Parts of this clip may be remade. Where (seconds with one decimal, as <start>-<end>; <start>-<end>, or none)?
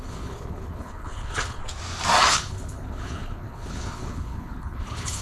0.0-1.6; 2.3-5.2